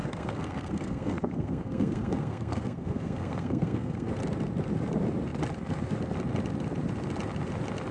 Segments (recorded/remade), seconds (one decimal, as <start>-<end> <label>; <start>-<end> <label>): 0.0-4.1 remade; 4.1-7.9 recorded